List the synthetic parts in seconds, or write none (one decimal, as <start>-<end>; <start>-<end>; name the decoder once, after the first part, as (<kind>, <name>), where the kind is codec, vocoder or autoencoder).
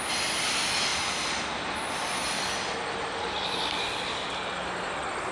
none